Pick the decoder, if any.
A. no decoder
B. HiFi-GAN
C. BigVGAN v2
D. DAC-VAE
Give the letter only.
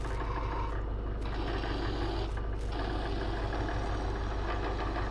A